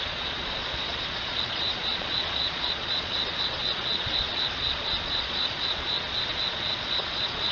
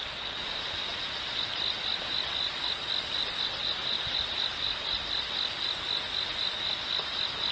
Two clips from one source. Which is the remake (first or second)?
first